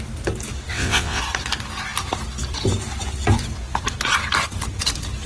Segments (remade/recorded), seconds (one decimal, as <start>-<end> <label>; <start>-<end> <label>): 0.0-0.7 recorded; 0.7-1.2 remade; 1.2-5.3 recorded